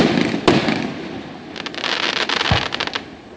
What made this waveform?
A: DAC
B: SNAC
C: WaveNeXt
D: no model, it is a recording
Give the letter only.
D